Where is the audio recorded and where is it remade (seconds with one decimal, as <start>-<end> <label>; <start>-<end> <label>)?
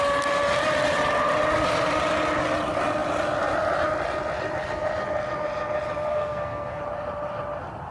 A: 0.0-6.1 recorded; 6.1-6.8 remade; 6.8-7.9 recorded